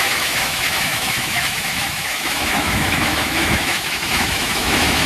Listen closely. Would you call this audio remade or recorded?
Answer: remade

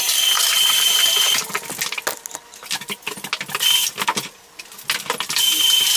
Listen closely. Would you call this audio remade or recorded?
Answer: recorded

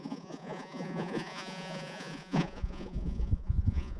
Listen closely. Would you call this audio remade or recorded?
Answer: remade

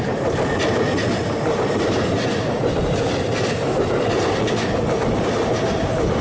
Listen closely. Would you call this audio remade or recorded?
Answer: recorded